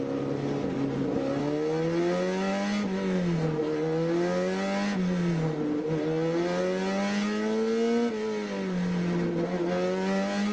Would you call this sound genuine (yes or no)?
yes